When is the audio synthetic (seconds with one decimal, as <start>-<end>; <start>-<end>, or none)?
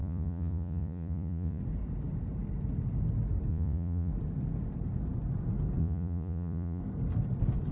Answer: 0.0-1.6; 3.5-4.1; 5.8-6.8